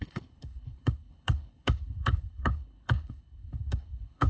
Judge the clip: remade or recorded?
remade